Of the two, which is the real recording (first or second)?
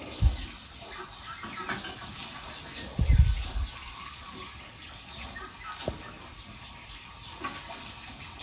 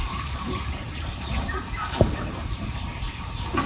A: first